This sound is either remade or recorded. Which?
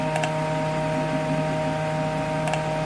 recorded